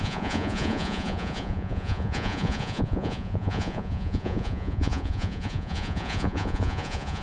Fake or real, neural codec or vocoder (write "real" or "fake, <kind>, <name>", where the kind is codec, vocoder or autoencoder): fake, vocoder, Vocos